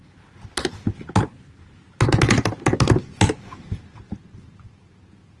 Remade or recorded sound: recorded